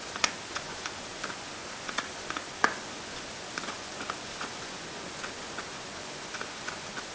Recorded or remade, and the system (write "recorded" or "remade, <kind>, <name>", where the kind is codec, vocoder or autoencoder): remade, vocoder, Vocos